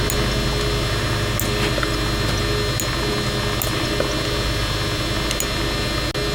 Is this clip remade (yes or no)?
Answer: no